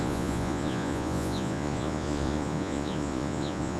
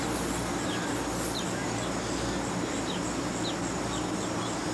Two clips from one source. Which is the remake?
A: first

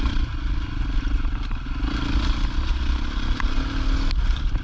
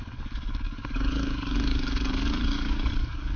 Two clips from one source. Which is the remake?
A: second